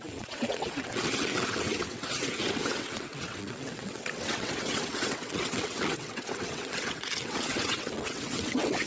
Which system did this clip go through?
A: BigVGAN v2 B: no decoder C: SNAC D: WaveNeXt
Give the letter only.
D